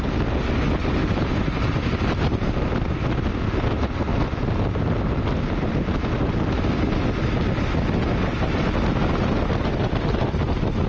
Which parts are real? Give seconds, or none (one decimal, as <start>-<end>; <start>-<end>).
0.0-1.0; 1.8-10.9